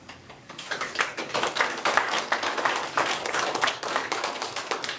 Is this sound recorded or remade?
remade